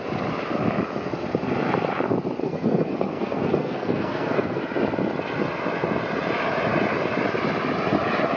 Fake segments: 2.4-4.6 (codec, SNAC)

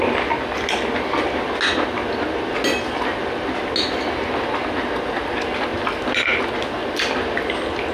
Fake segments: none

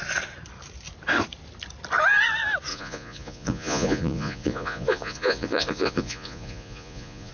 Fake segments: 2.7-7.3 (vocoder, Vocos)

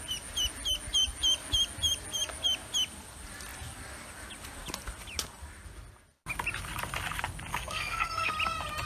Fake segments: 7.5-8.3 (codec, SNAC)